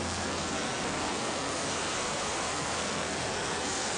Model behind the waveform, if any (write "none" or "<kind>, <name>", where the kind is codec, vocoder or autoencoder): codec, SNAC